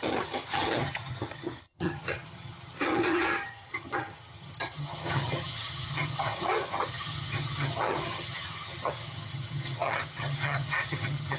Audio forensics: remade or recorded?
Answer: remade